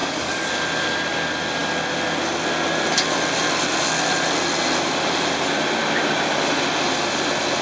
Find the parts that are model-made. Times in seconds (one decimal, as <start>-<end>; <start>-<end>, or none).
0.0-0.5